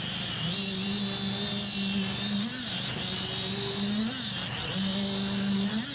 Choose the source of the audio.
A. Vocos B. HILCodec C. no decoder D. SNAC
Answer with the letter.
C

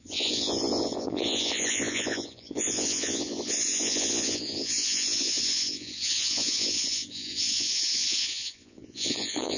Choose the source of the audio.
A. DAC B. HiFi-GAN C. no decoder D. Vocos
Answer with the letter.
D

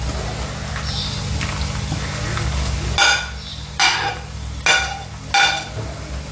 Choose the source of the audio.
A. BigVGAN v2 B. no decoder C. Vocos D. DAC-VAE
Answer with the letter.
B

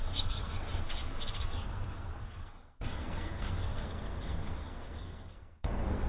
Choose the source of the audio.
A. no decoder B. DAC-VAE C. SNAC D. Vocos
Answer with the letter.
C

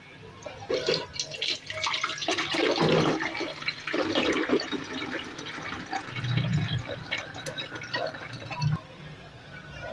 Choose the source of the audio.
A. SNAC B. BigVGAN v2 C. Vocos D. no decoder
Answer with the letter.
D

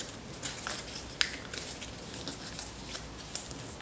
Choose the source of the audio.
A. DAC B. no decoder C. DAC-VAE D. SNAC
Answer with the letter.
B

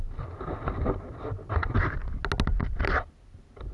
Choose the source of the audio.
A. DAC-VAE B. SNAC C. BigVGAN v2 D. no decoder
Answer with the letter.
D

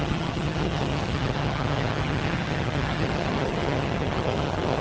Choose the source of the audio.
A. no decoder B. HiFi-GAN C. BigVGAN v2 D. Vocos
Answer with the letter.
B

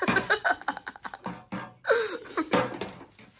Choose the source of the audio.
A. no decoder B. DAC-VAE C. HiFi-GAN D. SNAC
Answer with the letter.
A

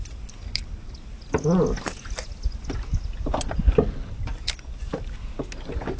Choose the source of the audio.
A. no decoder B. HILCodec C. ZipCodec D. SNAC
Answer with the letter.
A